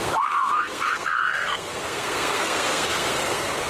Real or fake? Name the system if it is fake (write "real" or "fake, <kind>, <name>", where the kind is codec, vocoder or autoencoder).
fake, codec, SNAC